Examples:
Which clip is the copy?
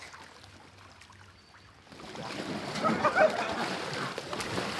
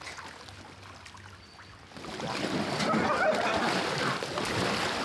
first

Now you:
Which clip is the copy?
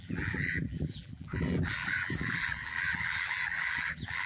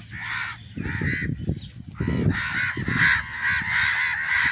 first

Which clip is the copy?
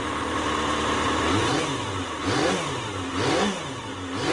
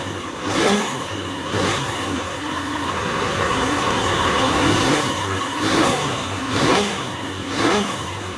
second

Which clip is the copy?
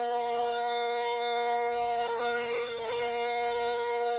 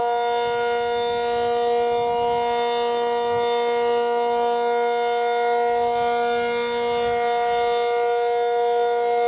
first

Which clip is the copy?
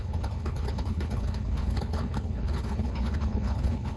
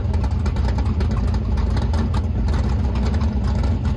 first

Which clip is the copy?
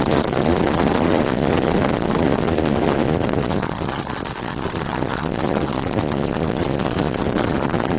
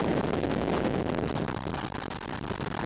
first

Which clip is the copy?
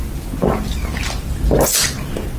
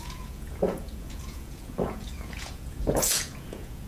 second